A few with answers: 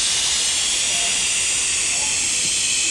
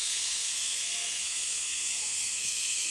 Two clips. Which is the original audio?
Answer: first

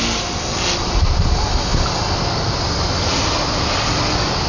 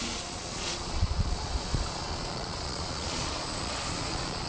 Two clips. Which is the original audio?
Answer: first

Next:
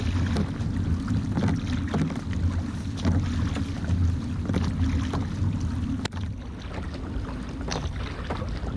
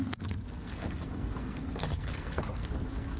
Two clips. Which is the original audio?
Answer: first